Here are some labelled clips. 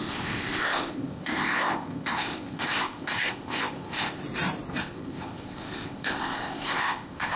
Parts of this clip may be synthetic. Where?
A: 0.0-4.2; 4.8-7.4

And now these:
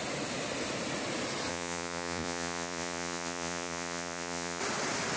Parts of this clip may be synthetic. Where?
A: 1.5-4.6